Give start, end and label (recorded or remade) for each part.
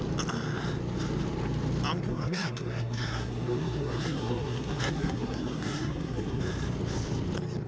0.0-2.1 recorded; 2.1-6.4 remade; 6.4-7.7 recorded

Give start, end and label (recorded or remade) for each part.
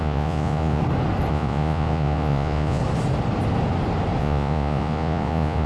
0.0-0.8 remade; 0.8-1.3 recorded; 1.3-2.8 remade; 2.8-4.2 recorded; 4.2-5.7 remade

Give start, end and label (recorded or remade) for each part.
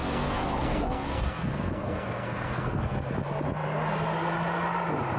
0.0-3.1 remade; 3.1-5.2 recorded